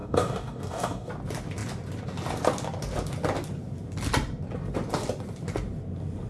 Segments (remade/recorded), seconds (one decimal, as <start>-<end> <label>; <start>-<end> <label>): 0.0-1.1 remade; 1.1-6.3 recorded